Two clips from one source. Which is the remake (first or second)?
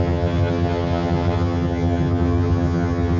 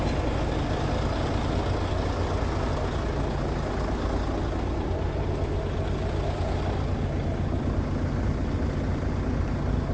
first